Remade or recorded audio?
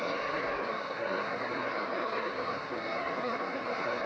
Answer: remade